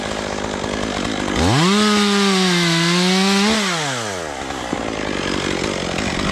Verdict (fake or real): real